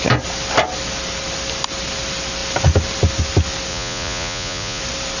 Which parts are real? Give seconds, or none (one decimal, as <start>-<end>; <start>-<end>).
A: 0.0-3.7; 4.8-5.2